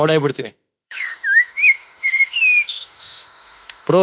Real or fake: fake